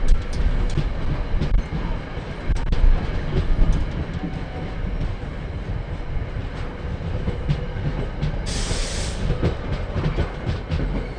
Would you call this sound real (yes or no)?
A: yes